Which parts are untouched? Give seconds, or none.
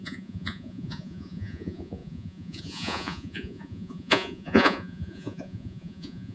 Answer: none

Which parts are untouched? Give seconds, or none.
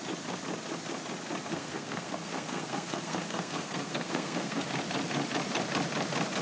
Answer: 0.0-1.5; 4.6-6.4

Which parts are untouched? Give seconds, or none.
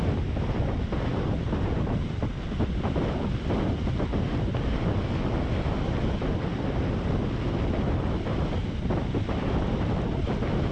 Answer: 0.0-10.7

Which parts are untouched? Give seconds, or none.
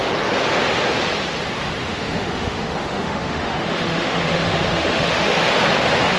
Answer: 0.0-1.8; 5.5-6.2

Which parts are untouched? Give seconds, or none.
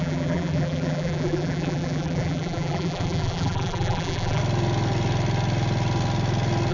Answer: 4.4-6.7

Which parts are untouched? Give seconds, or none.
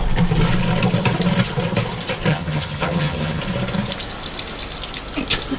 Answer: 0.0-2.3; 3.4-5.6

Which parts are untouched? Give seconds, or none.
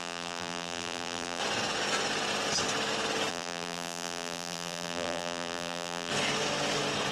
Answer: 1.4-3.3; 6.1-7.1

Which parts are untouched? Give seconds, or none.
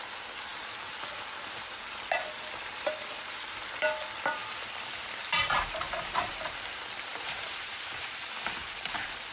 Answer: 0.0-4.4; 6.3-7.1; 8.2-8.6